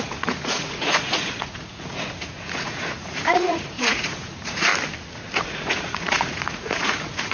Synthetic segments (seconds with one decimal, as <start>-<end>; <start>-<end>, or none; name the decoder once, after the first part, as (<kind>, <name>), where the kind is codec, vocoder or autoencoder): 0.0-4.7 (vocoder, Vocos); 5.5-7.3